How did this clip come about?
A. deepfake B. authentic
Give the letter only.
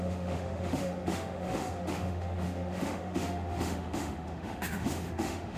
A